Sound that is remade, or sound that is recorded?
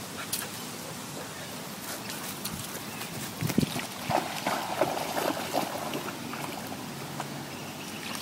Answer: recorded